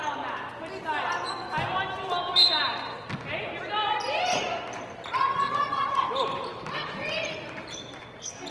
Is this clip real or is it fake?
real